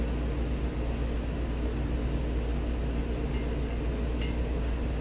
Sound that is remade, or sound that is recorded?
recorded